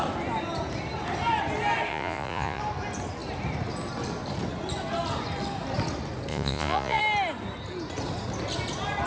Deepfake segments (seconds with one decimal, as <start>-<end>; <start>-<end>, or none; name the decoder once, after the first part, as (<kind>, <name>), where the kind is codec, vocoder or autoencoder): 1.9-2.6 (vocoder, Vocos); 6.3-7.0